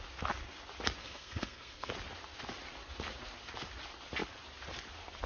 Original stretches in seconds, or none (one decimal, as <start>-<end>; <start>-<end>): 0.0-1.0; 1.9-5.3